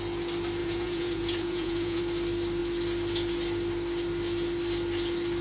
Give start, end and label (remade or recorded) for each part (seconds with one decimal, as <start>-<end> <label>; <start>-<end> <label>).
0.0-0.6 recorded; 0.6-2.0 remade; 2.0-5.4 recorded